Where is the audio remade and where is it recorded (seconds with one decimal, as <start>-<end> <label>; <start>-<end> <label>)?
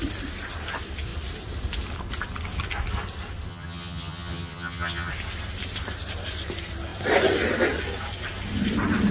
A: 0.0-3.5 recorded; 3.5-5.1 remade; 5.1-9.1 recorded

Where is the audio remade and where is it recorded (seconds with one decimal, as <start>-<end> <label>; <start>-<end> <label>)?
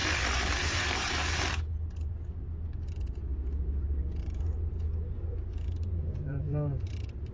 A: 0.0-0.5 recorded; 0.5-1.2 remade; 1.2-5.5 recorded; 5.5-7.3 remade